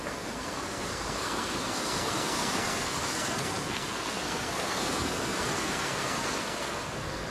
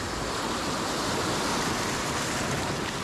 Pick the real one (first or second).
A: second